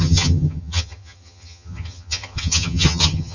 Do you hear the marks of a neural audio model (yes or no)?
yes